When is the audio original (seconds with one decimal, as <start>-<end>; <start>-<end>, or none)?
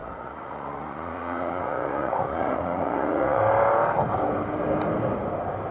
3.4-5.7